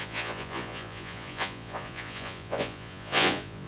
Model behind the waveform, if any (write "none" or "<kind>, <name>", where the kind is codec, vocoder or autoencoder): vocoder, Vocos